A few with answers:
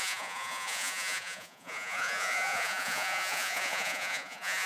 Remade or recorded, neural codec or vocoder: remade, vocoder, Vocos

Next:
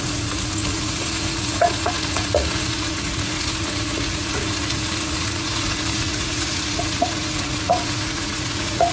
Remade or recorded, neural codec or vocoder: remade, vocoder, Vocos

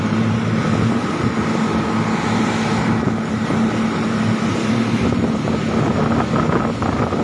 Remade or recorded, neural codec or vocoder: recorded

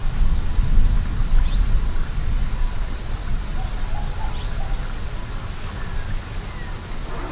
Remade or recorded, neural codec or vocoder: recorded